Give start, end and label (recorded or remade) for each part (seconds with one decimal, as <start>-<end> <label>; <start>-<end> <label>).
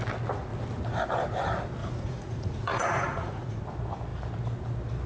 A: 0.0-1.8 recorded; 1.8-3.6 remade; 3.6-5.1 recorded